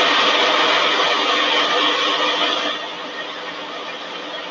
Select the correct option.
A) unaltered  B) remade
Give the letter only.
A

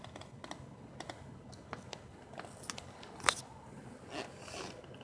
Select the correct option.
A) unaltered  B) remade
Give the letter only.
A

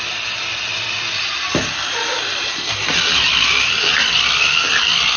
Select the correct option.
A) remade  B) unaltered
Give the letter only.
B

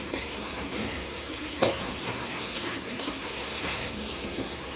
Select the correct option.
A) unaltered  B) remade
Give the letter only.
B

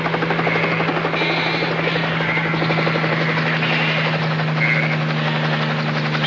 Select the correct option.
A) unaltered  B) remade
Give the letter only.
A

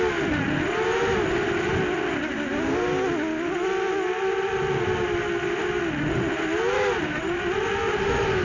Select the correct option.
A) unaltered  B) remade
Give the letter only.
A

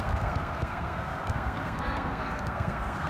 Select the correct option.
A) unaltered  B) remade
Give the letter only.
B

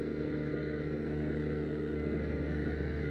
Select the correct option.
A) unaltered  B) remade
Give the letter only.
B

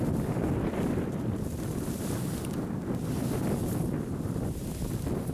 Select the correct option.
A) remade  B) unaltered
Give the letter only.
B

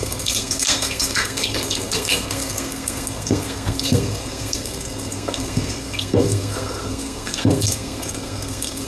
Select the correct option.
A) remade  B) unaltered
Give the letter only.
A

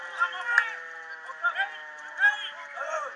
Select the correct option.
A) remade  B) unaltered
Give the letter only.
B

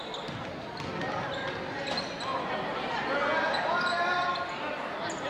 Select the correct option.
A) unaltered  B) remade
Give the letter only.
A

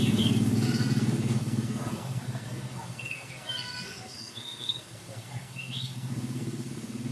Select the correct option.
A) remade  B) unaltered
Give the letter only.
A